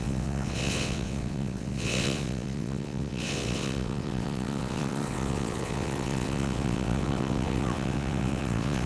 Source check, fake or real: fake